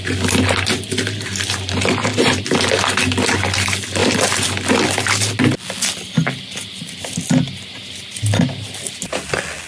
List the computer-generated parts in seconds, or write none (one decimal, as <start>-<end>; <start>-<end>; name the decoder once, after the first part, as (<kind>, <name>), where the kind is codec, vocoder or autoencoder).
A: none